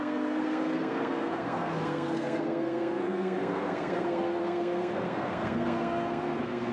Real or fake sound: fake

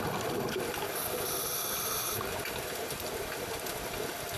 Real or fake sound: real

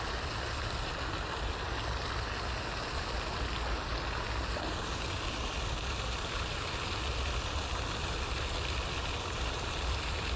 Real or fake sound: real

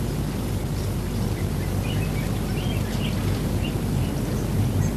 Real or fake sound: real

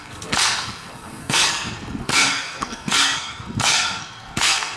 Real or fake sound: fake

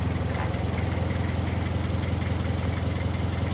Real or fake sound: real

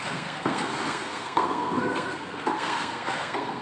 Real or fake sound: fake